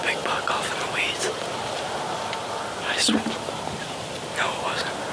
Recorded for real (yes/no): yes